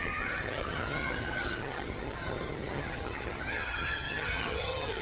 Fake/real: fake